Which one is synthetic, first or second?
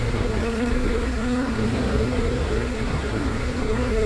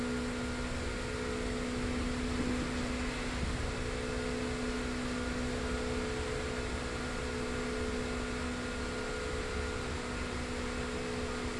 first